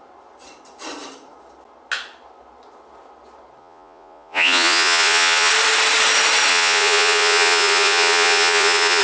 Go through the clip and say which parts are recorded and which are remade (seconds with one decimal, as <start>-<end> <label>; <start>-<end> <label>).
0.0-3.6 recorded; 3.6-5.5 remade; 5.5-6.5 recorded; 6.5-9.0 remade